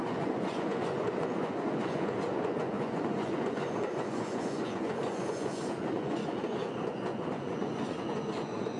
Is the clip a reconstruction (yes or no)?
yes